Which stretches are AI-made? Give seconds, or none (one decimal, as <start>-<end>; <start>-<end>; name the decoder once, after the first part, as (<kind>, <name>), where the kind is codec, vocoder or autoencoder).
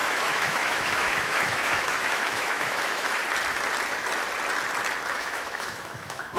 0.0-3.2 (autoencoder, DAC-VAE); 5.1-6.4